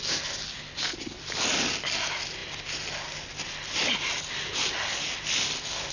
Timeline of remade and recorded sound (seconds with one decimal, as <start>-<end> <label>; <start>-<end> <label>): 0.0-5.9 recorded